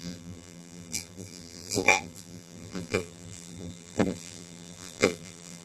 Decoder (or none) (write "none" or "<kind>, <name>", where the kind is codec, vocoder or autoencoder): vocoder, BigVGAN v2